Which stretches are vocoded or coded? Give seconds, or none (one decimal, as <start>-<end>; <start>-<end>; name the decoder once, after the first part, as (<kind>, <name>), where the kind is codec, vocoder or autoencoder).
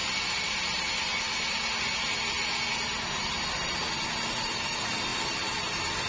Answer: none